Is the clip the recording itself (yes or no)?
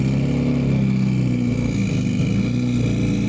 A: yes